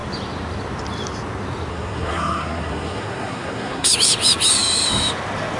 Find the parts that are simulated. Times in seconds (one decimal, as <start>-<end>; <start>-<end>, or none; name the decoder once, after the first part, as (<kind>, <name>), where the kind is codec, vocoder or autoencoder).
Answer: 1.7-3.9 (codec, SNAC)